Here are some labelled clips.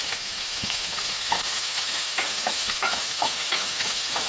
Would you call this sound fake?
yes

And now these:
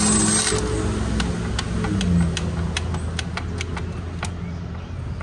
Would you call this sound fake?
no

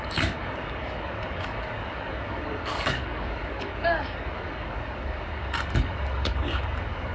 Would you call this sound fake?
yes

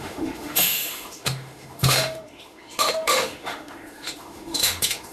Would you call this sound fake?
yes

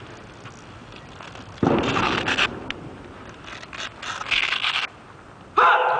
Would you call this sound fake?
no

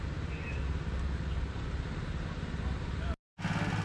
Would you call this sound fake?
no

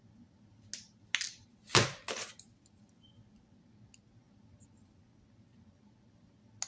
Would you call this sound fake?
no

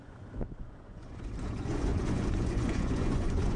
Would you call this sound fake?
yes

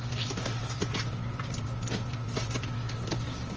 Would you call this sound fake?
no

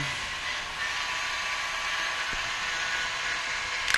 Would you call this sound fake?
no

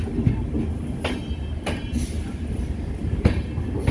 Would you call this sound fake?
no